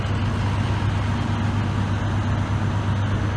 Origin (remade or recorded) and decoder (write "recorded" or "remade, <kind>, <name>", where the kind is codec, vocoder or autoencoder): recorded